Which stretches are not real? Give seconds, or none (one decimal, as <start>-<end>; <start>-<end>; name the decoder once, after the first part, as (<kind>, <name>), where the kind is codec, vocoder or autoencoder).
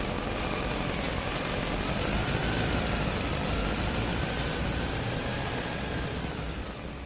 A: none